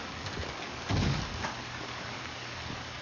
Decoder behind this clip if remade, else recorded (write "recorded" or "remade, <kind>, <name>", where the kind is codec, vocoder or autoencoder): remade, codec, DAC